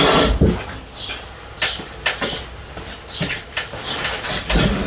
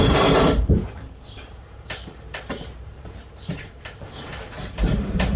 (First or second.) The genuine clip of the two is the first